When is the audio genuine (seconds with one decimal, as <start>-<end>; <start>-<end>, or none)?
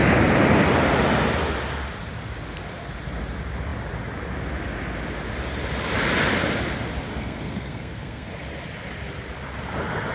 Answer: 0.0-7.1; 8.3-10.1